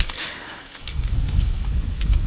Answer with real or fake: fake